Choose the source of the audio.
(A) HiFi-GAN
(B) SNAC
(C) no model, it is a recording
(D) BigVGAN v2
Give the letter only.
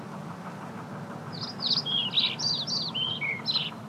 C